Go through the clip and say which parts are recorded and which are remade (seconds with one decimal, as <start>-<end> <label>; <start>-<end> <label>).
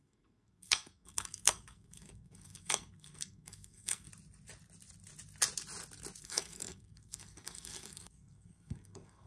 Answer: 0.0-4.1 remade; 4.1-6.2 recorded; 6.2-9.3 remade